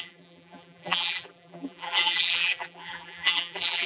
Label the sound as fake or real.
fake